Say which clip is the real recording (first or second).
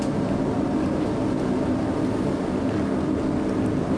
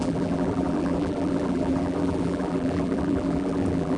first